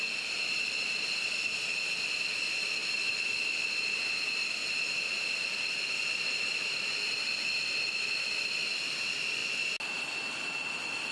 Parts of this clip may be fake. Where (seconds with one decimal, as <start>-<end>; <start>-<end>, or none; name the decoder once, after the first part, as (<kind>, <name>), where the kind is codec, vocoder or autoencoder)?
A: none